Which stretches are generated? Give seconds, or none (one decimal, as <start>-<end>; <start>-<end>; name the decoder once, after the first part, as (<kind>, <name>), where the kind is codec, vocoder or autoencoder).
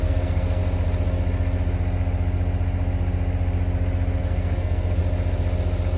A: 0.0-0.6 (codec, SNAC); 4.2-5.0